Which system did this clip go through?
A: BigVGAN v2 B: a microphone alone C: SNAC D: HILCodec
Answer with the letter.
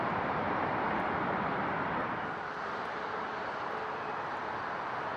A